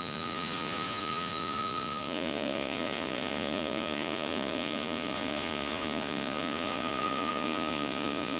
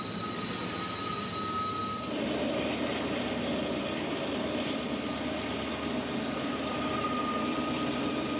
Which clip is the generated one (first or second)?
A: first